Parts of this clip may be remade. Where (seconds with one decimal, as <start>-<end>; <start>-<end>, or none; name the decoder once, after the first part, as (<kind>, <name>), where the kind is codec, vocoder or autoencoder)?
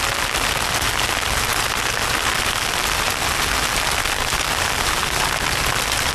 none